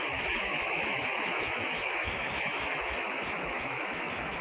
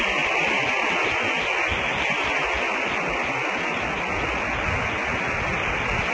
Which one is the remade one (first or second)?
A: first